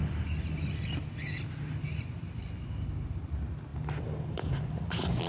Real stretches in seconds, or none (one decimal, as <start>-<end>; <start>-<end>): 0.0-5.3